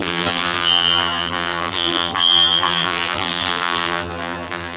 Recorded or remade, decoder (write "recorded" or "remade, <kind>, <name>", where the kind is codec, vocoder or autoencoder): remade, vocoder, BigVGAN v2